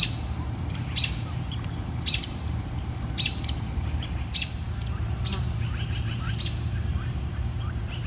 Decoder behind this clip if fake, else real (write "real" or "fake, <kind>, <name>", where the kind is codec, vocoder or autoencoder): fake, vocoder, BigVGAN v2